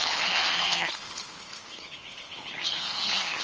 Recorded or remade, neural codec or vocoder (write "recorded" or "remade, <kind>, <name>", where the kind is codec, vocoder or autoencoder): remade, codec, HILCodec